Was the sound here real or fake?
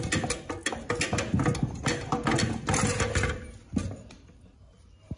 real